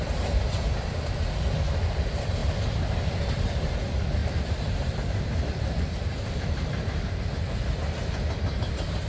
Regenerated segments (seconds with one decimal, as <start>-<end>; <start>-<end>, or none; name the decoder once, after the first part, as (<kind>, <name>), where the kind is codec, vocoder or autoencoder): 4.2-7.2 (vocoder, BigVGAN v2)